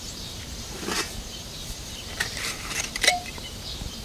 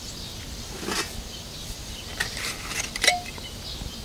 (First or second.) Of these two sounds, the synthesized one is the first